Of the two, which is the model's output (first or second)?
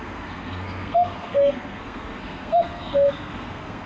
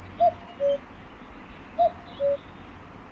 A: first